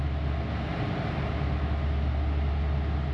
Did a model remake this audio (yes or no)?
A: no